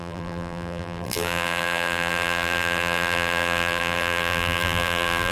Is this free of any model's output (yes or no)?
no